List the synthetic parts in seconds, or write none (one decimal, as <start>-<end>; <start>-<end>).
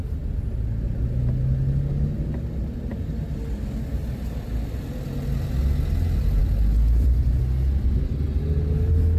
none